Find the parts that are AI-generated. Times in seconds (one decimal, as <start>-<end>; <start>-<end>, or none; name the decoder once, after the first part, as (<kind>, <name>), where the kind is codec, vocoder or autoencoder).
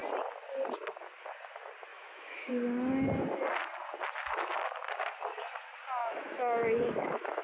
1.9-2.5 (autoencoder, DAC-VAE); 6.0-7.4